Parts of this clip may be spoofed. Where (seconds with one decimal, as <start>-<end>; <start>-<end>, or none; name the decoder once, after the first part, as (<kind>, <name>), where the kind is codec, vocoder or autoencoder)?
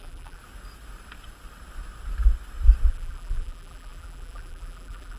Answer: 0.0-0.4 (vocoder, BigVGAN v2); 2.9-5.2